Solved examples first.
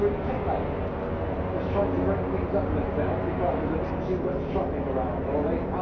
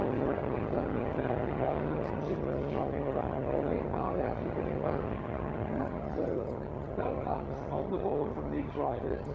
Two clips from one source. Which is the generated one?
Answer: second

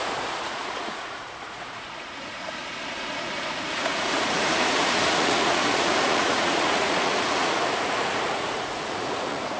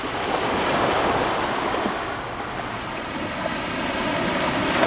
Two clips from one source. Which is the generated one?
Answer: first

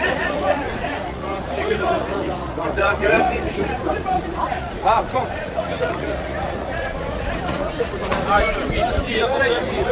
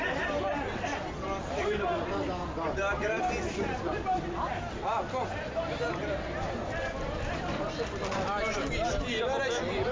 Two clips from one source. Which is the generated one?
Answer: first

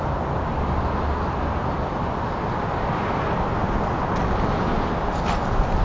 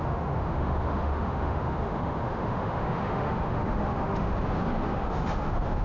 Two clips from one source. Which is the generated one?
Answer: second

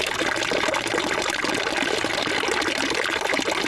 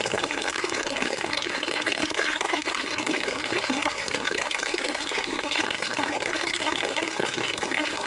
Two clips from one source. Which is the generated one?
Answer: second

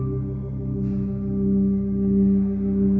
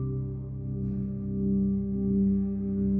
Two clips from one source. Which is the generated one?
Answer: second